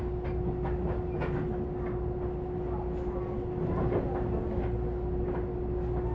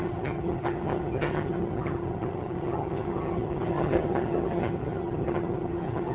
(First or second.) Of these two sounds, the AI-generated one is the second